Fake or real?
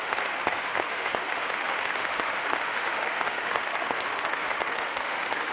fake